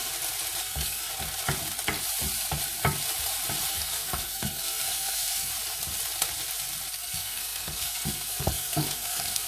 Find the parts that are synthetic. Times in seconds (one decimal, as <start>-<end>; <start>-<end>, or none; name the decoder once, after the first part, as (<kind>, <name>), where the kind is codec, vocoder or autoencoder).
0.6-1.1 (codec, SNAC); 3.7-5.5; 6.9-9.5